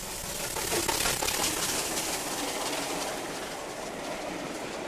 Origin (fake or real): real